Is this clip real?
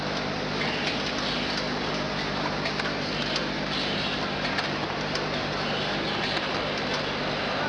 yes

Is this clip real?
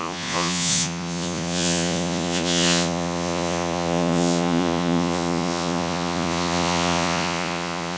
no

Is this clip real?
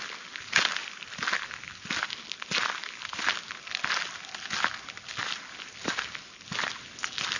yes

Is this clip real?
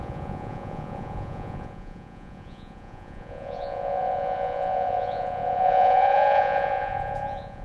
no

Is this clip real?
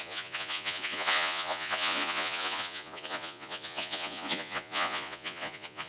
no